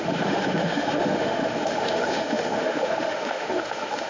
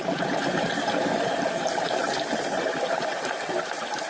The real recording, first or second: second